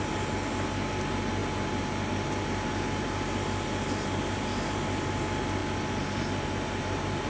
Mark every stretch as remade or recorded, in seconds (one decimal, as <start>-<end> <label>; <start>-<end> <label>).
0.0-7.3 recorded